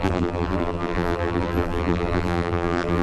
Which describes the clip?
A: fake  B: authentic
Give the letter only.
A